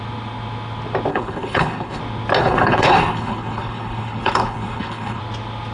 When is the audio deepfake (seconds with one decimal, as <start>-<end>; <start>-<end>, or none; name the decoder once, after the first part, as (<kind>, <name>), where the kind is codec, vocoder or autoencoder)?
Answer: 1.1-2.0 (codec, HILCodec); 2.4-5.2